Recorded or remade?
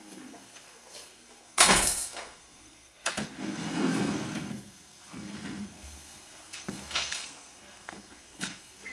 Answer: remade